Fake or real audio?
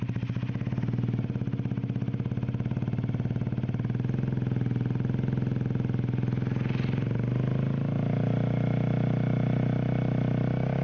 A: real